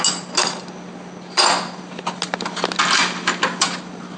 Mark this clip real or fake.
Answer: real